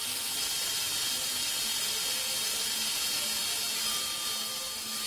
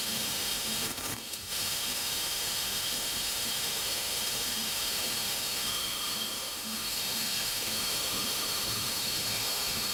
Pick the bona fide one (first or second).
first